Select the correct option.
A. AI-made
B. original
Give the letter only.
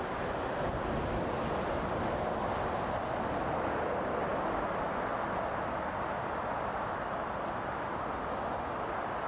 B